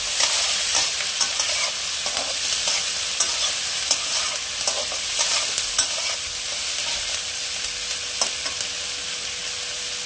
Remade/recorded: recorded